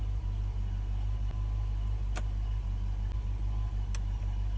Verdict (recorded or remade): recorded